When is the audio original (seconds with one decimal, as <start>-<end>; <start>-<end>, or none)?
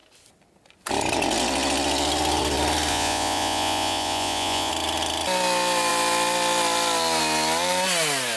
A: 0.0-2.9; 4.7-8.4